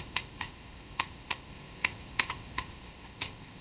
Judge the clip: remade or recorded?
remade